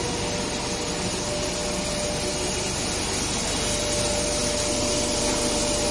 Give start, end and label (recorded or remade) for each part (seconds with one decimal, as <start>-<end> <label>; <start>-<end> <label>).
0.0-5.9 recorded

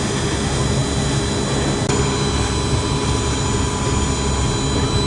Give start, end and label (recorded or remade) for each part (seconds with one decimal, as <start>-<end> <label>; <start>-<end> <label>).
0.0-5.1 recorded

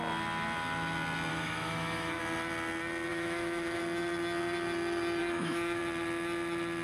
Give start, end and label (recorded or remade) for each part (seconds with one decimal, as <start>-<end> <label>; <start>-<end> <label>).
0.0-1.3 recorded; 1.3-2.2 remade; 2.2-3.1 recorded; 3.1-3.8 remade; 3.8-5.2 recorded; 5.2-5.8 remade; 5.8-6.8 recorded

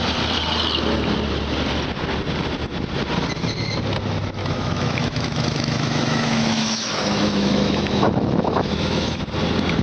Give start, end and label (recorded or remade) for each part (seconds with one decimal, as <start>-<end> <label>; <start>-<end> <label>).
0.0-4.4 recorded; 4.4-9.2 remade; 9.2-9.8 recorded

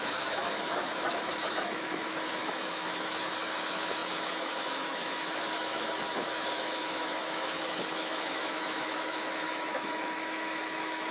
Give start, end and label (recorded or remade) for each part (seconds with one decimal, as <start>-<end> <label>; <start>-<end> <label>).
0.0-11.1 remade

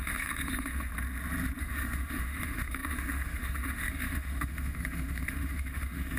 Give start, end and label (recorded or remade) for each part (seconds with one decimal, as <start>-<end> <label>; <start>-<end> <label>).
0.0-0.9 remade; 0.9-1.6 recorded; 1.6-6.2 remade

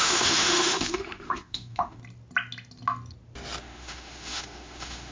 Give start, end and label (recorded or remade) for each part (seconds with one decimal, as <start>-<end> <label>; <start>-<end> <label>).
0.0-2.0 remade; 2.0-3.6 recorded; 3.6-5.1 remade